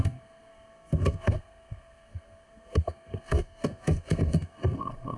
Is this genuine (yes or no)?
no